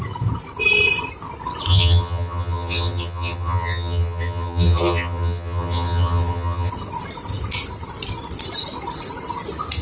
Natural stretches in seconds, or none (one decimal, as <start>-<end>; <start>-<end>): 0.0-1.7; 6.7-9.8